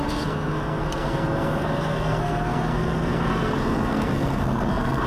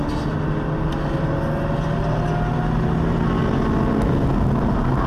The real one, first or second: second